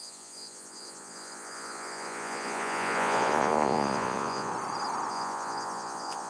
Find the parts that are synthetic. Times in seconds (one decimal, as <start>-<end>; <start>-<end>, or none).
0.0-4.5; 5.1-6.3